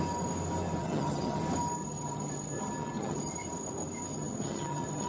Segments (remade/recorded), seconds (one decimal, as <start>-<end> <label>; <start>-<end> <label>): 0.0-0.8 recorded; 0.8-1.4 remade; 1.4-1.8 recorded; 1.8-3.3 remade; 3.3-4.1 recorded; 4.1-5.1 remade

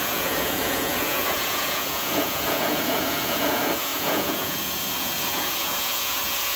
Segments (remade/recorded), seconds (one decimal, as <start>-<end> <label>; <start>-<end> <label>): 0.0-6.6 remade

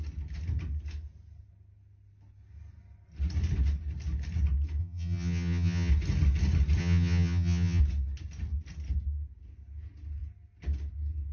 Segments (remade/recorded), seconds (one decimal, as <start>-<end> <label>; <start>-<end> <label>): 0.0-4.8 recorded; 4.8-5.9 remade; 5.9-6.8 recorded; 6.8-7.8 remade; 7.8-11.3 recorded

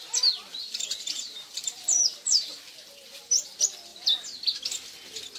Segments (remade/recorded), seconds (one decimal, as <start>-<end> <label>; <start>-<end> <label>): 0.0-0.5 recorded; 0.5-2.6 remade; 2.6-5.4 recorded

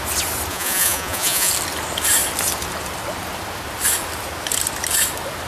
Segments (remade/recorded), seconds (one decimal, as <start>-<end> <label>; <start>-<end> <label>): 0.0-0.5 recorded; 0.5-1.5 remade; 1.5-5.5 recorded

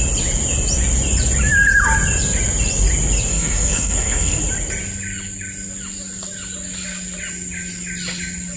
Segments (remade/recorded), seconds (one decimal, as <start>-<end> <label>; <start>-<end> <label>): 0.0-3.3 recorded; 3.3-4.4 remade; 4.4-8.6 recorded